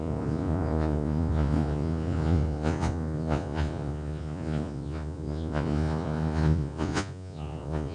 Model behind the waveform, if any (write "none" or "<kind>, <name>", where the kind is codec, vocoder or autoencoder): vocoder, Vocos